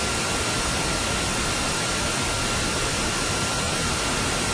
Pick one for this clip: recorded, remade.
recorded